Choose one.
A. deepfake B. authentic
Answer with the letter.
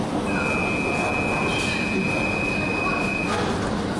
B